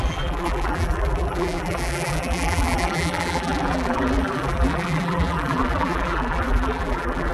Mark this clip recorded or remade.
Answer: remade